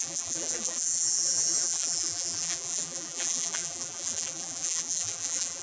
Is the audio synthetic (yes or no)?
yes